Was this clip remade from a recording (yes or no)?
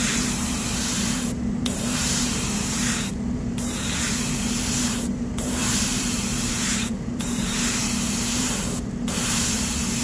yes